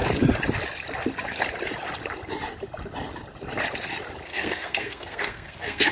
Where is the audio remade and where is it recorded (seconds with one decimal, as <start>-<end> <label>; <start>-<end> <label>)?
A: 0.0-4.3 recorded; 4.3-5.9 remade